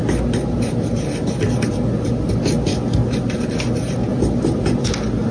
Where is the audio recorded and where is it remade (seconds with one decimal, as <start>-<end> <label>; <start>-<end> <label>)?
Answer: 0.0-4.1 recorded; 4.1-4.6 remade; 4.6-5.3 recorded